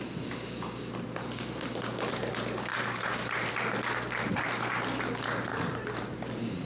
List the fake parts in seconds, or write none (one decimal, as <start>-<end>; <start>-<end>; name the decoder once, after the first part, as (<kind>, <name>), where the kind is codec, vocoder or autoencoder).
2.7-3.5 (vocoder, BigVGAN v2); 5.5-6.7